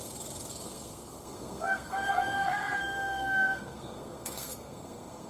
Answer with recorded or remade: remade